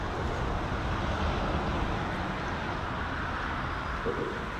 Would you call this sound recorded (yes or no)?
yes